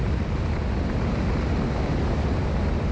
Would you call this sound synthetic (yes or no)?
no